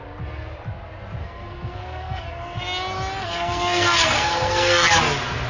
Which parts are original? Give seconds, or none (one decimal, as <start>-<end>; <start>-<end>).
0.0-1.2; 2.6-3.2; 5.0-5.5